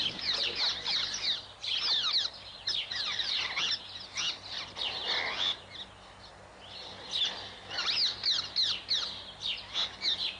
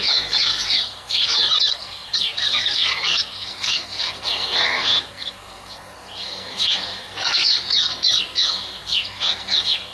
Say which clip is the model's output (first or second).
second